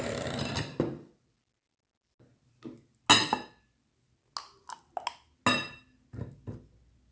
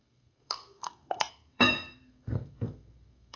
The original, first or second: first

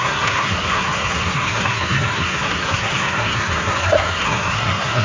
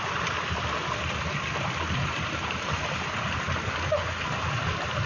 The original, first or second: second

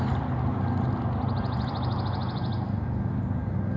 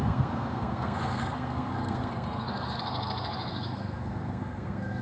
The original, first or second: first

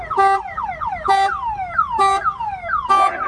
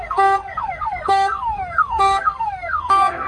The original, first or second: first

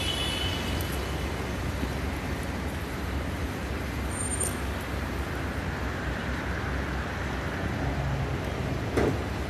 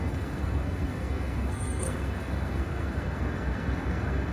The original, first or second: first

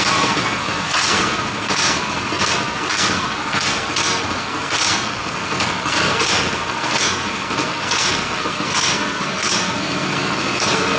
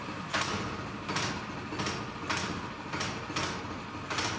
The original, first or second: second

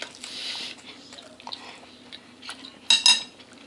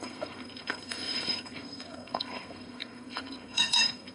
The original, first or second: first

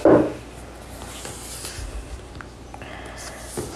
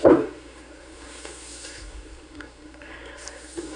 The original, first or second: first